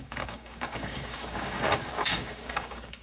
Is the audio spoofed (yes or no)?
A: yes